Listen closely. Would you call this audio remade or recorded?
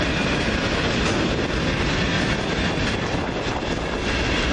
recorded